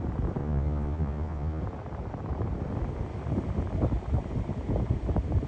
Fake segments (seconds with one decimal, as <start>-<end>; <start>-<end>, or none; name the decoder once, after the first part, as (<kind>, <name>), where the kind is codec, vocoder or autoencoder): 0.4-1.6 (vocoder, Vocos)